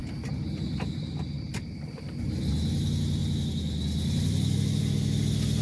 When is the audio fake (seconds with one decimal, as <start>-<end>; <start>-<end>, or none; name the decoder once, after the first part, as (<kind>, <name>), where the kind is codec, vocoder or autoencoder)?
none